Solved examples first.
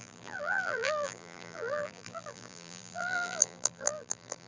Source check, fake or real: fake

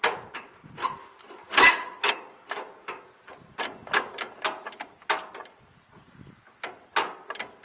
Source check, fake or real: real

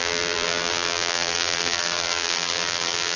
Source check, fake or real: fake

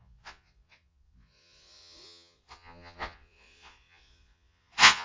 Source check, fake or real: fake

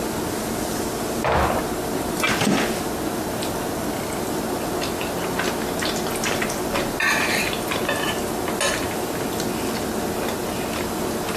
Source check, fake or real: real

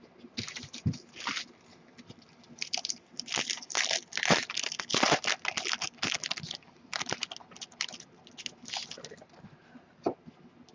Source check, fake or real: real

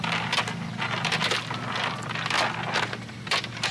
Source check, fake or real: real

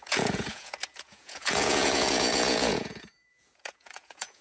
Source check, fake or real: fake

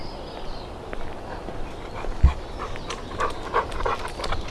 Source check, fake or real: real